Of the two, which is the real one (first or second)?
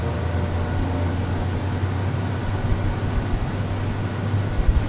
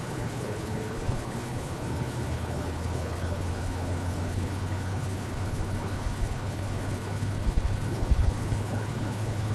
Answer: first